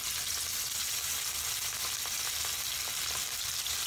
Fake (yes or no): no